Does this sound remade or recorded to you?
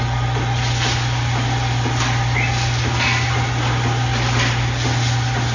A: recorded